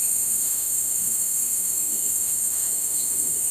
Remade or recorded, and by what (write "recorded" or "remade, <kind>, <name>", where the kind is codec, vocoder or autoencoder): remade, autoencoder, DAC-VAE